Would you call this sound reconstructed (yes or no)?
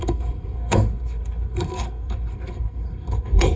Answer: yes